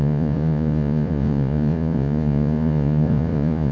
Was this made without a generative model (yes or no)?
no